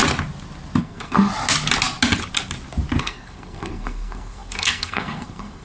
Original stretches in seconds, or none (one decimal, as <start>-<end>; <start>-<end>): 0.0-0.8; 1.3-3.0